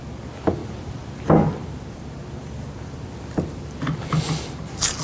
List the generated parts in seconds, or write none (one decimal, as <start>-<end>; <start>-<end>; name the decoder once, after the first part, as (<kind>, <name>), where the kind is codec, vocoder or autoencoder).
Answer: 0.6-3.6 (vocoder, BigVGAN v2)